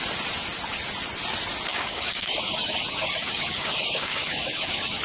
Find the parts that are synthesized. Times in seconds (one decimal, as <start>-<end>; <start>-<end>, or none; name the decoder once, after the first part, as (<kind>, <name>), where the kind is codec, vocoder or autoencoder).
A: 1.7-5.0 (codec, DAC)